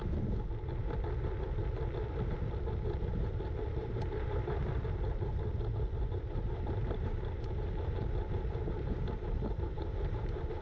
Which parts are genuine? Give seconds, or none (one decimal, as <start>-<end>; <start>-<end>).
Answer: 0.0-3.0; 4.6-6.0